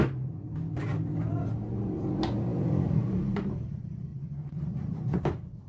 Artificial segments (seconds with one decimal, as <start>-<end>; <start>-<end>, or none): 4.1-5.2